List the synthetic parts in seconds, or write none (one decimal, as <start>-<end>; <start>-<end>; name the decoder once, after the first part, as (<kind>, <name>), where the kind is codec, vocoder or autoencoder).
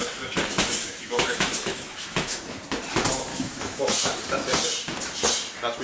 0.8-2.6 (autoencoder, DAC-VAE); 3.3-4.2